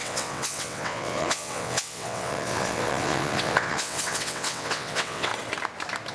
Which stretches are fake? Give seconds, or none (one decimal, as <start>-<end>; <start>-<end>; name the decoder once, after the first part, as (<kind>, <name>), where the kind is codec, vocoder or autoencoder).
0.0-5.3 (vocoder, WaveNeXt)